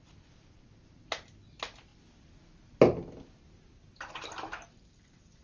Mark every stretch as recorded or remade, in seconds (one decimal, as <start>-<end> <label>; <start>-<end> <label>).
0.0-5.4 recorded